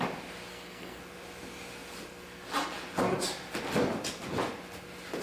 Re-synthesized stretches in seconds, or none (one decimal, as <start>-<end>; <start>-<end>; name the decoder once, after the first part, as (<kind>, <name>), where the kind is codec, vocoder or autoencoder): 0.5-1.0 (codec, SNAC)